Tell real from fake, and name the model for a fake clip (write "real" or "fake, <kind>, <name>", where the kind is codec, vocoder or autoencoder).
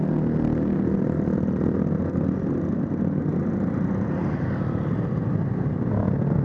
real